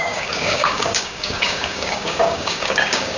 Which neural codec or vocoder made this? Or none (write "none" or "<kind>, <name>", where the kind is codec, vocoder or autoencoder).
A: codec, DAC